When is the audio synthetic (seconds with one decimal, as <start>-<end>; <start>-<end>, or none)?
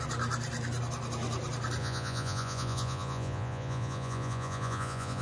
1.8-5.2